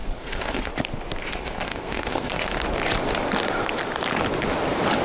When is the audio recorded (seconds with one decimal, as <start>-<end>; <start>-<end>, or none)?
0.7-1.2; 2.6-5.0